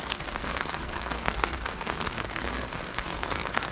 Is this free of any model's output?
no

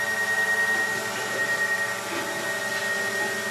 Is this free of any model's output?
yes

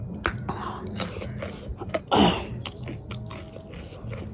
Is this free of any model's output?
yes